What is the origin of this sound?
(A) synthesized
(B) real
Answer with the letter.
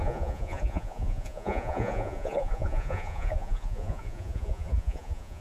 A